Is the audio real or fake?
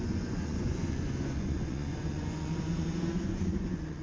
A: fake